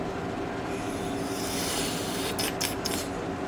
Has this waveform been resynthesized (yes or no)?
no